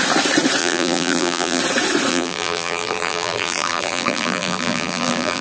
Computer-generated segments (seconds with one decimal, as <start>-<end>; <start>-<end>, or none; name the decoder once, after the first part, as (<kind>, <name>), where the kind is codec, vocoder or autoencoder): 0.6-1.6 (vocoder, BigVGAN v2); 2.1-5.4